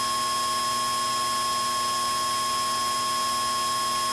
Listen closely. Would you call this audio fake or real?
real